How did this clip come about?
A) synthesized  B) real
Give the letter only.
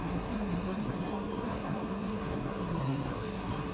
A